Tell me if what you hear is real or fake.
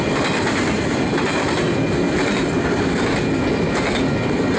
real